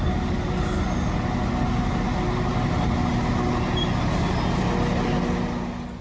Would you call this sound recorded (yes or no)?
yes